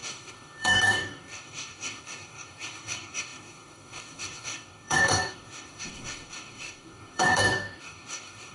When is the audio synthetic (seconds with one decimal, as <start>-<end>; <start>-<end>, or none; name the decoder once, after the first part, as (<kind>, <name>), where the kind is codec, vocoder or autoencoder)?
0.0-8.5 (codec, DAC)

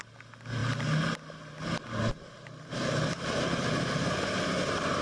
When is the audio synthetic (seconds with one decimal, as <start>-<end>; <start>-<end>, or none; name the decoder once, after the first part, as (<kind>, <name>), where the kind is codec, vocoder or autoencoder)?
none

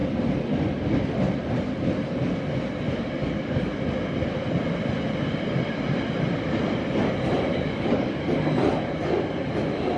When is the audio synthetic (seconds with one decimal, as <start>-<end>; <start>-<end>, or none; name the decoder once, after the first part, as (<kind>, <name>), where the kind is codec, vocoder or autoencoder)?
3.2-3.7 (codec, DAC); 7.5-8.2